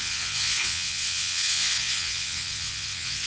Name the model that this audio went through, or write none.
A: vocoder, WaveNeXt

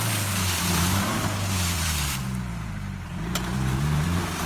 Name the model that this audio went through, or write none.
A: vocoder, BigVGAN v2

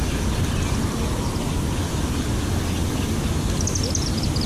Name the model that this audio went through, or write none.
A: none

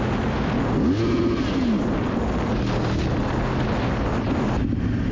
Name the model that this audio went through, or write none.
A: none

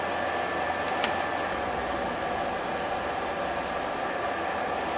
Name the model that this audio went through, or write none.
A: none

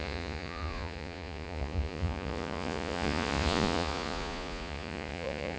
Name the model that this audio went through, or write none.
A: vocoder, Vocos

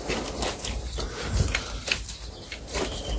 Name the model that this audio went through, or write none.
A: none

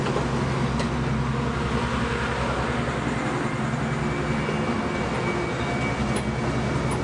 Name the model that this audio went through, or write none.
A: none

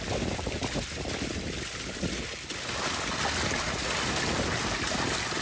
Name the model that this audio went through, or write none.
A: none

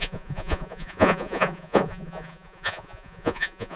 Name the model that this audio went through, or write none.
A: vocoder, Vocos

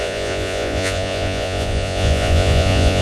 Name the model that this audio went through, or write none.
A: vocoder, Vocos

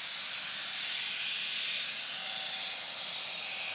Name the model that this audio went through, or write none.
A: none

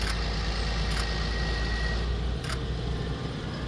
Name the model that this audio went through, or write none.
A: none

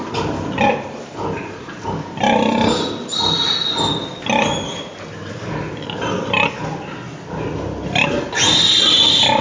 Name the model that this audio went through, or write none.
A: none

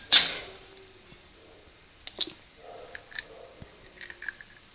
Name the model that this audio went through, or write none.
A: none